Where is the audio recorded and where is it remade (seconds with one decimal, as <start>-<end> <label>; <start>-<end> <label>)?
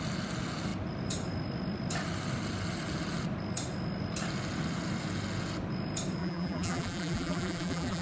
0.0-6.2 recorded; 6.2-8.0 remade